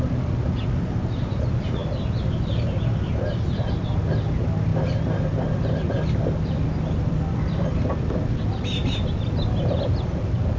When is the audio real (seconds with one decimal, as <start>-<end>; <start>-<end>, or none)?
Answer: 0.0-10.6